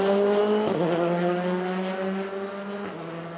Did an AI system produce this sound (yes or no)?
no